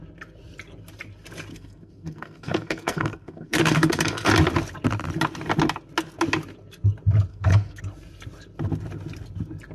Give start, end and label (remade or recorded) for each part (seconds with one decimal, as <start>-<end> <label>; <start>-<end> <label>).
0.0-1.5 recorded; 1.5-4.3 remade; 4.3-7.3 recorded; 7.3-7.8 remade; 7.8-9.7 recorded